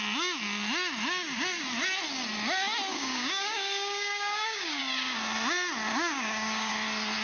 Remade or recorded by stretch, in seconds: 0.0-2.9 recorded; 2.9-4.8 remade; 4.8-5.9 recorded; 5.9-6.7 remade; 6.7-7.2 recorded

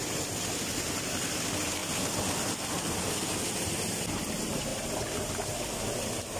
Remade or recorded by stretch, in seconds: 0.0-6.4 recorded

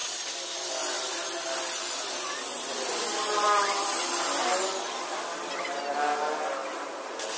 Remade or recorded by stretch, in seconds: 0.0-7.4 recorded

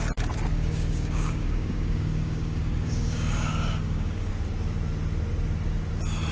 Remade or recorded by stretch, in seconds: 0.0-0.5 recorded; 0.5-4.3 remade; 4.3-6.3 recorded

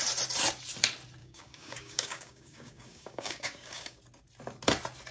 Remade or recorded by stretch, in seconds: 0.0-1.2 recorded; 1.2-4.0 remade; 4.0-5.1 recorded